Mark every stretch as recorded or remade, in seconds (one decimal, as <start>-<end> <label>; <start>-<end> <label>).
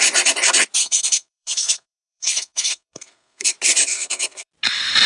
0.0-0.8 recorded; 0.8-3.5 remade; 3.5-3.9 recorded; 3.9-4.5 remade; 4.5-5.1 recorded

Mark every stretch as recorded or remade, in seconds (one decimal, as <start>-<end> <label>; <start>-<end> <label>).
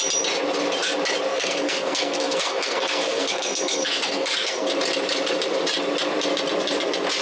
0.0-1.3 recorded; 1.3-4.7 remade; 4.7-7.2 recorded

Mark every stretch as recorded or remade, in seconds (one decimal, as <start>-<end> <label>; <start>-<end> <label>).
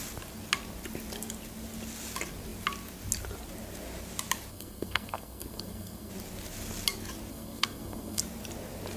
0.0-4.5 recorded; 4.5-6.1 remade; 6.1-7.3 recorded; 7.3-8.2 remade; 8.2-9.0 recorded